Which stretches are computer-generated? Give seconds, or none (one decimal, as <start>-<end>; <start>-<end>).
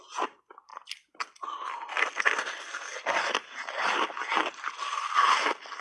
none